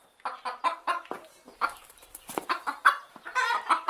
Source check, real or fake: fake